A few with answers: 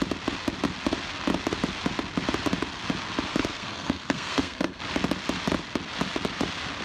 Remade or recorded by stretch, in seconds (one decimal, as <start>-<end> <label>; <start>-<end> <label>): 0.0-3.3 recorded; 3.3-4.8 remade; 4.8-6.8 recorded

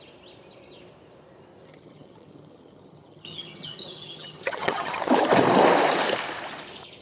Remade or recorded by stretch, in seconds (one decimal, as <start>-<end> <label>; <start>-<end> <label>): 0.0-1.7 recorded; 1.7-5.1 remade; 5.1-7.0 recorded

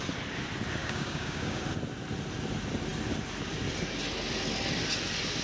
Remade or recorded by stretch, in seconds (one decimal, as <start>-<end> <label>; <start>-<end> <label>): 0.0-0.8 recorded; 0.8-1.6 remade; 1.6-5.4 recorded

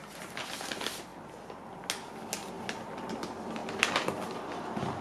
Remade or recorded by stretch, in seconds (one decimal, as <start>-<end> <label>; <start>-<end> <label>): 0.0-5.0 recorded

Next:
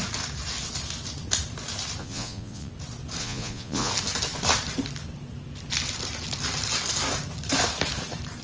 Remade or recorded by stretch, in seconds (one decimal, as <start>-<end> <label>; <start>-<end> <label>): 0.0-2.0 recorded; 2.0-2.7 remade; 2.7-3.2 recorded; 3.2-3.9 remade; 3.9-8.4 recorded

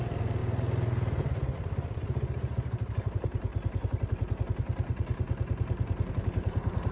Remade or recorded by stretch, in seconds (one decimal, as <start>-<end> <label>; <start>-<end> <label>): 0.0-3.5 remade; 3.5-6.1 recorded; 6.1-6.9 remade

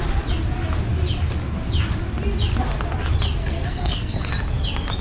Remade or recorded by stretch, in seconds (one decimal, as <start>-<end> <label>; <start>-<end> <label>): 0.0-3.4 recorded; 3.4-4.3 remade; 4.3-5.0 recorded

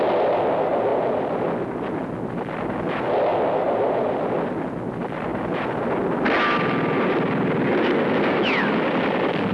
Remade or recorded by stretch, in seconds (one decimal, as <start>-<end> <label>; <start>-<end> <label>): 0.0-3.3 recorded; 3.3-4.2 remade; 4.2-5.3 recorded; 5.3-6.0 remade; 6.0-9.5 recorded